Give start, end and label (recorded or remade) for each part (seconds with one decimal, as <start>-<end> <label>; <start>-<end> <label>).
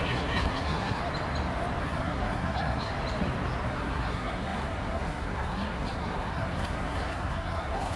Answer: 0.0-1.0 remade; 1.0-1.8 recorded; 1.8-2.9 remade; 2.9-3.7 recorded; 3.7-8.0 remade